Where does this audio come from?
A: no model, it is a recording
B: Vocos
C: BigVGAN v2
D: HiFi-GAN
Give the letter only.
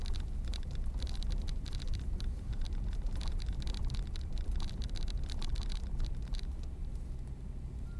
C